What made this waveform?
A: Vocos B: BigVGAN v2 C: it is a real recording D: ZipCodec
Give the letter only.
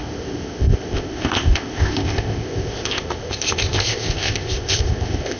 D